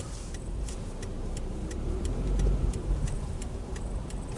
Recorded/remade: remade